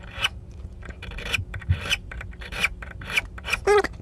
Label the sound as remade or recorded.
remade